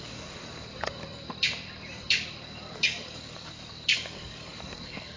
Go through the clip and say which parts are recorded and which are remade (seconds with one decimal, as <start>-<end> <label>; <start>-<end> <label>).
0.0-0.4 remade; 0.4-2.4 recorded; 2.4-5.2 remade